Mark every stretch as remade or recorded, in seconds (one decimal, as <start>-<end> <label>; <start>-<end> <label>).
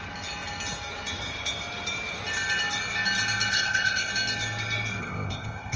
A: 0.0-3.5 recorded; 3.5-4.1 remade; 4.1-5.0 recorded; 5.0-5.8 remade